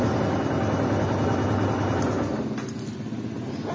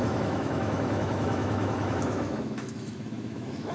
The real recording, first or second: first